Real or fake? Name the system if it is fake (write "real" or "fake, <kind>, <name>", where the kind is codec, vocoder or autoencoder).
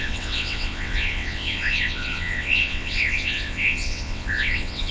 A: fake, vocoder, WaveNeXt